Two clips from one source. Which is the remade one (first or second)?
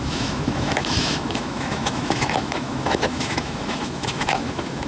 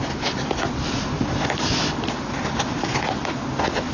first